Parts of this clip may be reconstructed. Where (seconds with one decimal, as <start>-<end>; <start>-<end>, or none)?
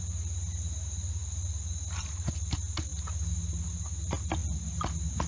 none